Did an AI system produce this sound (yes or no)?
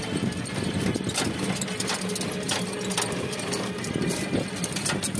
no